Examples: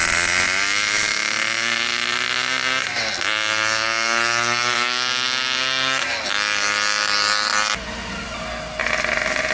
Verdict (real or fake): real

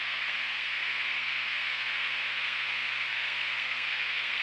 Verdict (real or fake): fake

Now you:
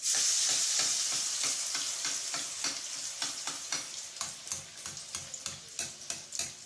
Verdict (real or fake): real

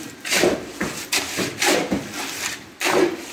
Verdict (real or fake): real